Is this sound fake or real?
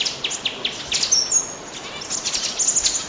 real